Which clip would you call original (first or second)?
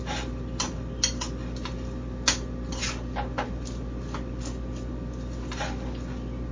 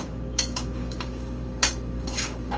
first